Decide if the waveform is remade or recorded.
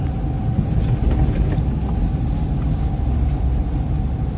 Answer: recorded